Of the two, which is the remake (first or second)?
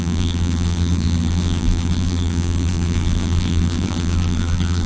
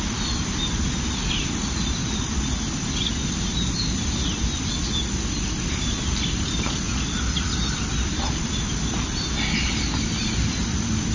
first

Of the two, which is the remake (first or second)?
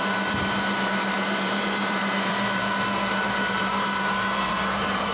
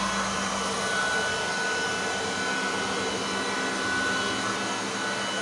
first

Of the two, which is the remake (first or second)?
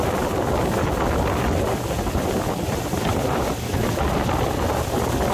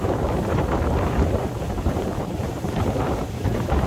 second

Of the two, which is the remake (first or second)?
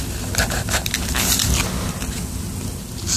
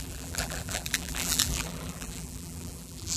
second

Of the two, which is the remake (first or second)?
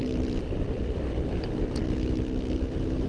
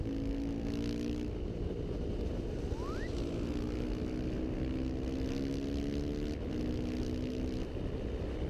first